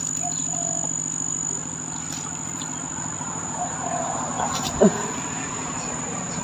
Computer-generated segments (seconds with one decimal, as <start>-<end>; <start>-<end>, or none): 3.2-6.4